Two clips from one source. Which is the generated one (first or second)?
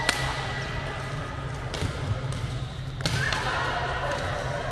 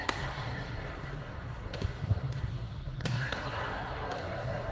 second